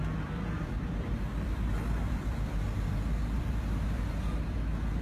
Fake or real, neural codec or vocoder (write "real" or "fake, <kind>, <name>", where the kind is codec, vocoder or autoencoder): fake, vocoder, BigVGAN v2